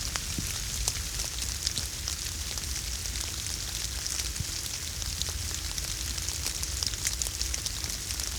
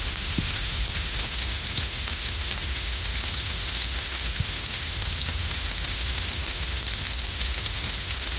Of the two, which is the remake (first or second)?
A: second